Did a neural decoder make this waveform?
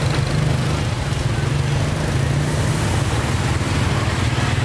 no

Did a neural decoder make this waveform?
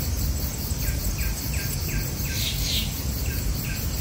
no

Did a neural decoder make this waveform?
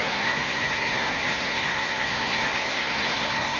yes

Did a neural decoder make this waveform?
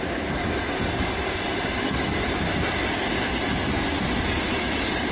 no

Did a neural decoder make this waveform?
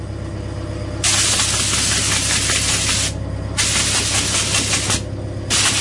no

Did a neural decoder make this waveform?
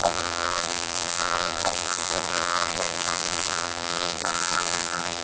yes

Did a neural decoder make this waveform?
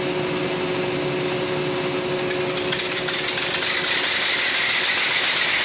no